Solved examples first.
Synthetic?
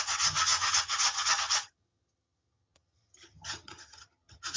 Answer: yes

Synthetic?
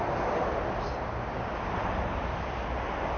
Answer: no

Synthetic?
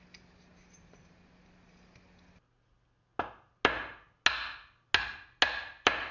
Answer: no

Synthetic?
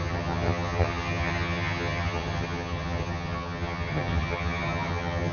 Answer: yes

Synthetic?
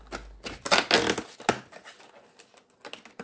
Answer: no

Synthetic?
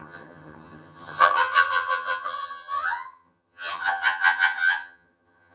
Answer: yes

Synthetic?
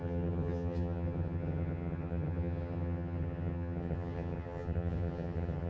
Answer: yes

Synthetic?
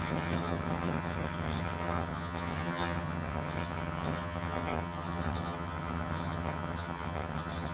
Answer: yes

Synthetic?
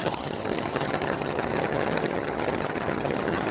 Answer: yes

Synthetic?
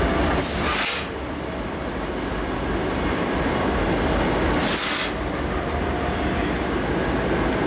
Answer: no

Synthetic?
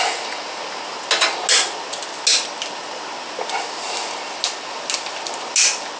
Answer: no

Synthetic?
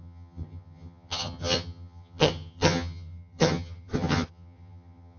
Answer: yes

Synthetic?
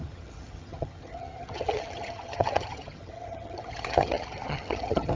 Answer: yes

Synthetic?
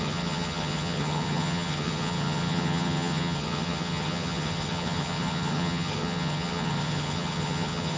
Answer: yes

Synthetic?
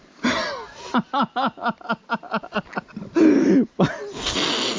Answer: no